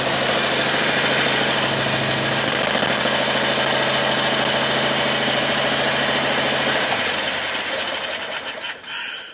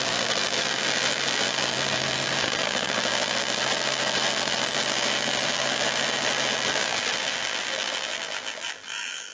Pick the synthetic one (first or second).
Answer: second